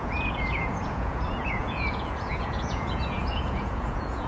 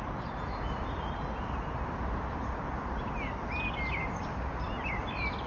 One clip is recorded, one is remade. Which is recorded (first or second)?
second